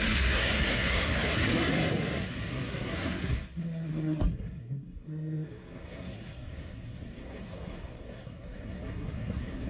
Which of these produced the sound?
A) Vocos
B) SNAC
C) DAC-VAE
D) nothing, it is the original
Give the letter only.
B